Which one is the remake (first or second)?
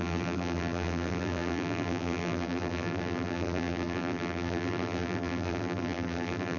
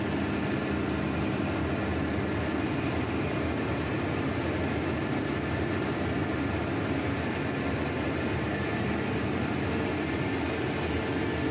first